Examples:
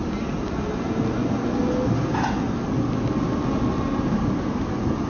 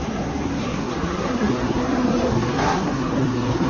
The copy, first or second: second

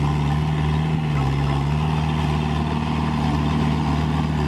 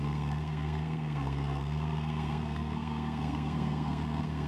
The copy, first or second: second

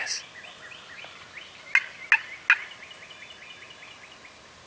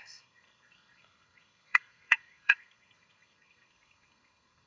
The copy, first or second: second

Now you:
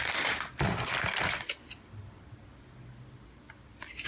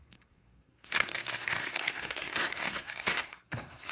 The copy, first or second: second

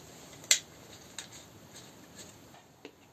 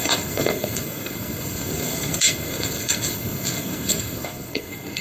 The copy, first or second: second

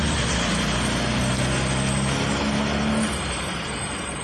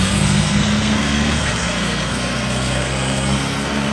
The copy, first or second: second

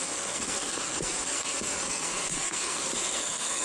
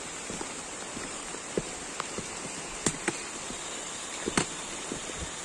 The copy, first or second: first